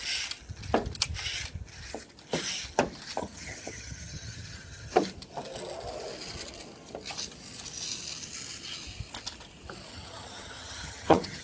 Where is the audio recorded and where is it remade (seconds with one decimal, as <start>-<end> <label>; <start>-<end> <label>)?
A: 0.0-3.2 recorded; 3.2-4.9 remade; 4.9-9.9 recorded; 9.9-11.4 remade